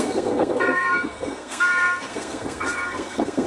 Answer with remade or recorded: remade